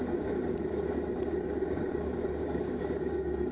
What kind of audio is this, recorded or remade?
remade